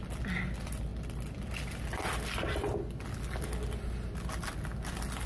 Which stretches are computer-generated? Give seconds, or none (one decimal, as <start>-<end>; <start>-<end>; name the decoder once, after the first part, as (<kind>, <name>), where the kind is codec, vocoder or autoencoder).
none